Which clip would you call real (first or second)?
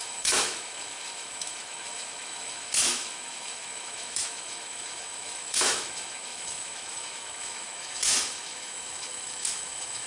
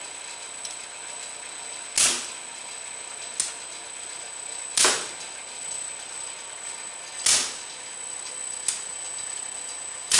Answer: second